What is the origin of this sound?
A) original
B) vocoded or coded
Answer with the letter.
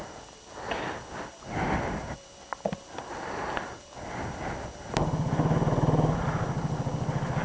A